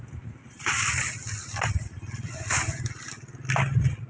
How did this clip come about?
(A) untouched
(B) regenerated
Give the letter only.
A